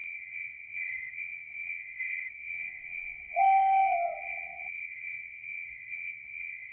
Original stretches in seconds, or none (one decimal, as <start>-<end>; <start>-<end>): none